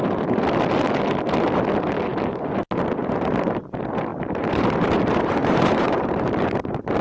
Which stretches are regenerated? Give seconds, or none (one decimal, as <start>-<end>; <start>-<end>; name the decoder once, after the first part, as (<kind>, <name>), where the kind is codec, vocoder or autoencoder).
3.0-3.6 (vocoder, BigVGAN v2); 4.1-6.3